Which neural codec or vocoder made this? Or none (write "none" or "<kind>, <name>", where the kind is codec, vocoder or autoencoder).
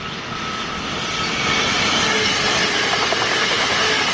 none